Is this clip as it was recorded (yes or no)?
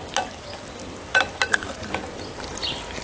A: yes